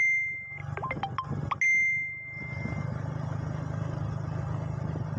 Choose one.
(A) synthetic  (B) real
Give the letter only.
B